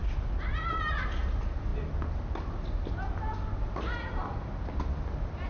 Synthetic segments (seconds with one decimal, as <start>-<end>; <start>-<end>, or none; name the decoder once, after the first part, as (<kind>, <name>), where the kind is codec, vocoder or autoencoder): none